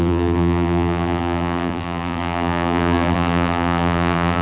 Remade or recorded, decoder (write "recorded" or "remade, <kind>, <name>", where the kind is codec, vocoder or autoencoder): remade, vocoder, BigVGAN v2